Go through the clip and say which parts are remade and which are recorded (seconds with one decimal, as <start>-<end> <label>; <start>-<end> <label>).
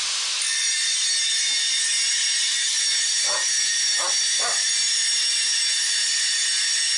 0.0-7.0 recorded